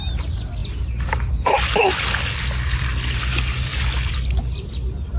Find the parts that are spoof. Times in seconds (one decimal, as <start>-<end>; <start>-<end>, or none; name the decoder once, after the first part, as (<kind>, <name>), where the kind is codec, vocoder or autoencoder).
0.6-1.5 (vocoder, BigVGAN v2); 3.7-4.8